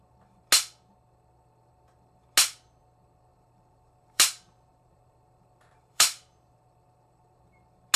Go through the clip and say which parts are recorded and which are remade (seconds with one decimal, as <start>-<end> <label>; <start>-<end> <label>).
0.0-3.3 recorded; 3.3-7.4 remade; 7.4-8.0 recorded